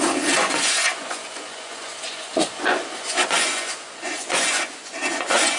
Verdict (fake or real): fake